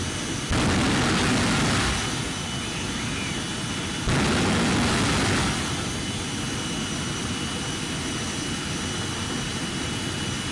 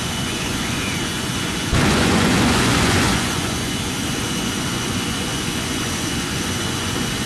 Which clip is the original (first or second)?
first